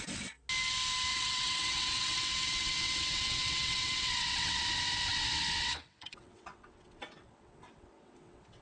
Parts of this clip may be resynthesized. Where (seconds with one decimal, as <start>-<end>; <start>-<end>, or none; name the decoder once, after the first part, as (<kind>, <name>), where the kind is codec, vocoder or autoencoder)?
1.1-4.6 (vocoder, WaveNeXt); 5.1-8.6